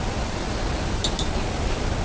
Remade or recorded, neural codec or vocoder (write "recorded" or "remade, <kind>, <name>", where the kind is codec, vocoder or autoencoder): recorded